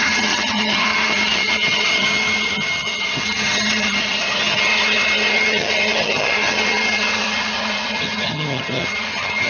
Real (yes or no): no